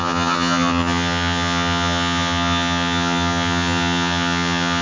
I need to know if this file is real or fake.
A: fake